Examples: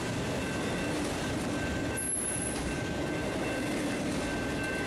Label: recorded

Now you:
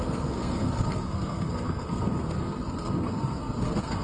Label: remade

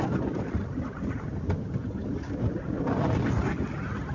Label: recorded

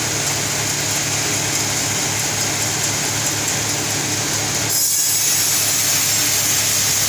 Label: recorded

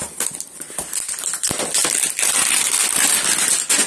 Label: recorded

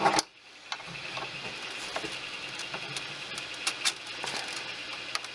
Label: recorded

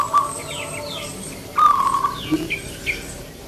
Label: recorded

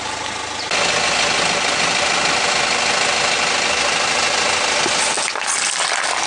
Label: recorded